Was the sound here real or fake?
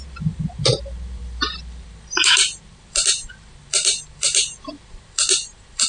fake